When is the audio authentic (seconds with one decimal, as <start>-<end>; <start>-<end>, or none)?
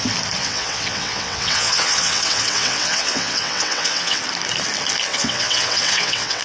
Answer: 0.0-0.4; 4.2-5.1